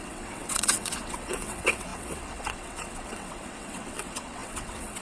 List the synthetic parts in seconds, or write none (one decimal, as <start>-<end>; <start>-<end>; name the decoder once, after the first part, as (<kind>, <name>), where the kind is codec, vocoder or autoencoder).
0.0-5.0 (vocoder, WaveNeXt)